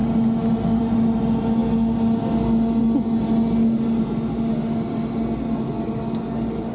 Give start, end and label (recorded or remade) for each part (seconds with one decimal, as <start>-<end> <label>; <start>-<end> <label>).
0.0-6.7 recorded

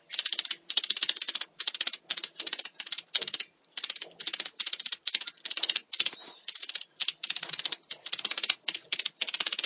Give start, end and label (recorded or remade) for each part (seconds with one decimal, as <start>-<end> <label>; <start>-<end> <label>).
0.0-9.7 recorded

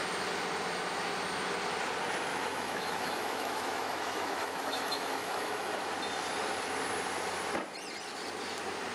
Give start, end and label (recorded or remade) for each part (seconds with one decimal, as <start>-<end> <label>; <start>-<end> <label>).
0.0-2.3 recorded; 2.3-5.9 remade; 5.9-8.9 recorded

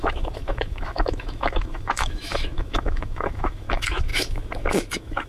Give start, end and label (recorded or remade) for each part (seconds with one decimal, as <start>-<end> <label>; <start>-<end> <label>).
0.0-5.3 remade

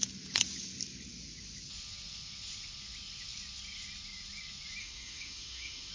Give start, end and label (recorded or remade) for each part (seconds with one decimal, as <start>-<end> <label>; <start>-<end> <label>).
0.0-4.8 recorded; 4.8-5.9 remade

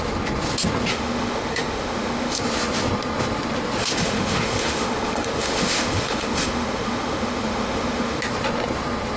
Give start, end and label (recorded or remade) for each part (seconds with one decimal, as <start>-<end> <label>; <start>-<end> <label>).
0.0-0.9 recorded; 0.9-2.4 remade; 2.4-3.8 recorded; 3.8-8.2 remade; 8.2-9.2 recorded

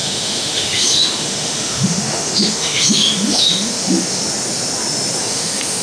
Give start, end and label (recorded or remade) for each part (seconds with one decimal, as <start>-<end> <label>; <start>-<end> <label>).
0.0-4.2 remade; 4.2-5.2 recorded; 5.2-5.8 remade